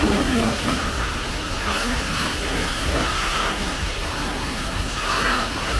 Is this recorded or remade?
remade